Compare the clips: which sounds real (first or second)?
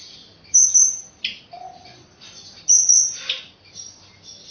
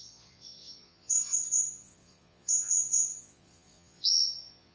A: first